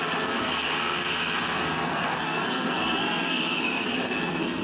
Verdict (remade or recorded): remade